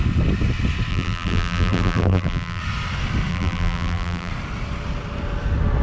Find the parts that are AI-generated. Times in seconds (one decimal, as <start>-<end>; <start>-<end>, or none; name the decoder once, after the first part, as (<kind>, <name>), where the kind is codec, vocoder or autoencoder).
0.9-2.6 (vocoder, BigVGAN v2); 3.3-4.3